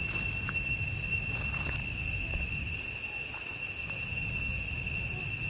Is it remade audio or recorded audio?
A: recorded